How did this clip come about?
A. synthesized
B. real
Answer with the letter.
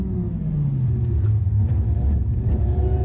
B